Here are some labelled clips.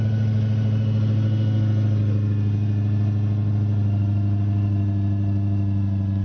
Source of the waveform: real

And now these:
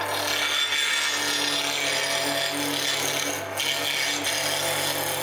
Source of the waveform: real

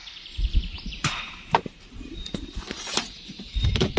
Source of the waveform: fake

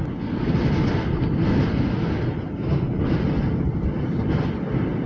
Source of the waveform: real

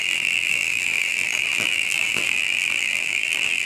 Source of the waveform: fake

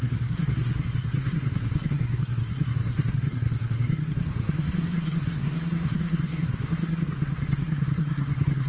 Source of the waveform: fake